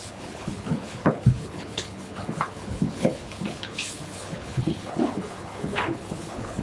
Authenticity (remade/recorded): remade